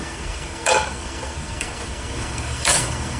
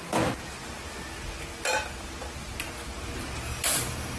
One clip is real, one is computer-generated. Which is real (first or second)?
second